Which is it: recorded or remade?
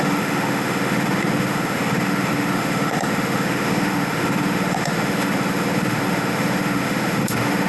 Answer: remade